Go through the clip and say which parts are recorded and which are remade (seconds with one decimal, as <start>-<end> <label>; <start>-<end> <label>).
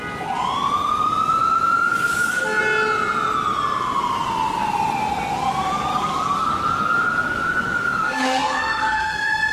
0.0-1.9 recorded; 1.9-2.6 remade; 2.6-5.9 recorded; 5.9-9.5 remade